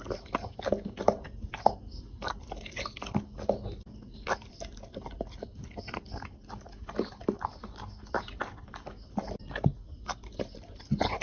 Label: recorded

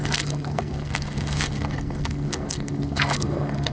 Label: remade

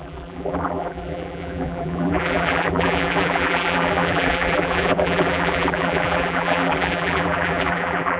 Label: remade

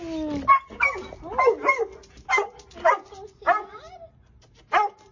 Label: recorded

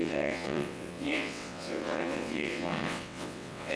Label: remade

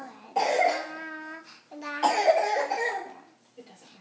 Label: recorded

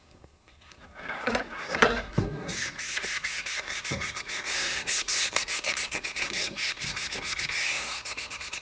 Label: remade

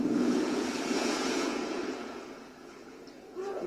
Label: remade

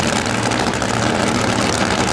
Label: recorded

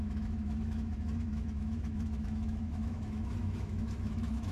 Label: remade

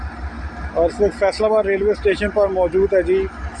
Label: recorded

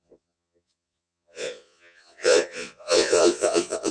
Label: remade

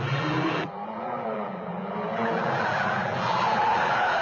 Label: remade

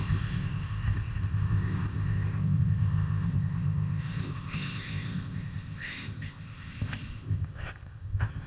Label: remade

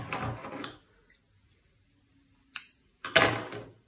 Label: recorded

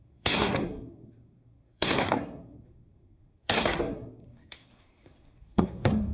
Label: remade